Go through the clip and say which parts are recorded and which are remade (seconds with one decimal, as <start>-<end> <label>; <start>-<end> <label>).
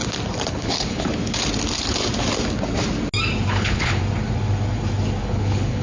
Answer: 0.0-0.5 recorded; 0.5-1.1 remade; 1.1-3.5 recorded; 3.5-4.0 remade; 4.0-5.2 recorded; 5.2-5.8 remade